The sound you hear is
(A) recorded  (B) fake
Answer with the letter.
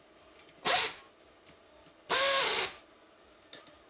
A